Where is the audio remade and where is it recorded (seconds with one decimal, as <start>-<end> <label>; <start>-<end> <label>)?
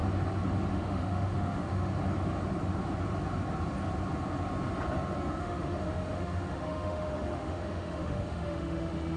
0.0-0.7 recorded; 0.7-1.9 remade; 1.9-5.4 recorded; 5.4-9.2 remade